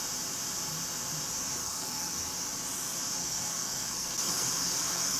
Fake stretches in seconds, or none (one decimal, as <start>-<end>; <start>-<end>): 1.6-2.2; 3.2-5.2